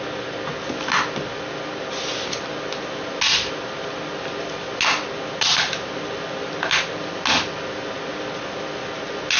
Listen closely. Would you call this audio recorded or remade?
recorded